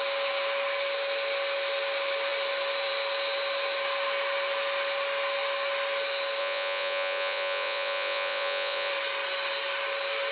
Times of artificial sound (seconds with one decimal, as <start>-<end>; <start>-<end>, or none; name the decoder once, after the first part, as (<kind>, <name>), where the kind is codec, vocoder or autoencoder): 6.4-8.9 (vocoder, Vocos)

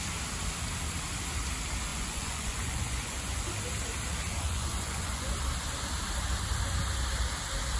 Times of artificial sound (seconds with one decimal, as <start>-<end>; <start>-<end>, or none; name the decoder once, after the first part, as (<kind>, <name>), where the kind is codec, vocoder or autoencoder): 1.9-3.4 (vocoder, Vocos); 4.3-5.3